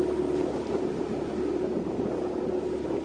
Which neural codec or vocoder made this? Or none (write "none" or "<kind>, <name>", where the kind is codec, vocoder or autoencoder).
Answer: none